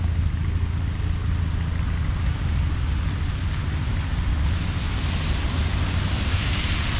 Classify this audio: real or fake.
real